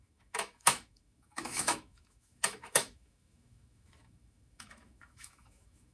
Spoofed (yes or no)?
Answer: yes